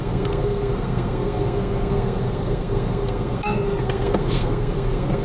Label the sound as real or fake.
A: fake